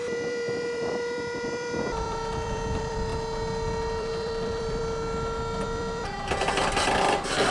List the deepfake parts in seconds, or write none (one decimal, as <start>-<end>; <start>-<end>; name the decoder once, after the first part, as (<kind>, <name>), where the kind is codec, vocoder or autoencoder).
0.0-3.1 (vocoder, BigVGAN v2); 4.0-4.8; 5.6-7.5